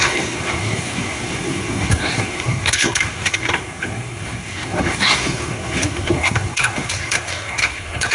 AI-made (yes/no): yes